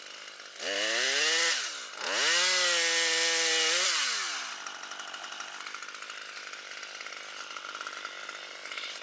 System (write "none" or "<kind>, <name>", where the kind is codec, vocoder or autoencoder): none